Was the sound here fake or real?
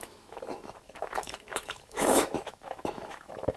fake